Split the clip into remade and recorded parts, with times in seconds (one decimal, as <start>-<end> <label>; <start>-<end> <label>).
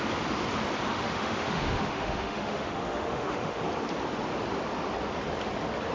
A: 0.0-0.9 recorded; 0.9-3.6 remade; 3.6-5.9 recorded